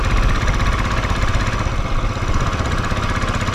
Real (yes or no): yes